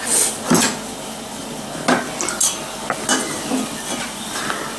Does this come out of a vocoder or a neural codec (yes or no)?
no